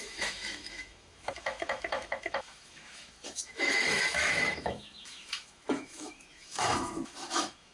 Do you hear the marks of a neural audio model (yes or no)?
yes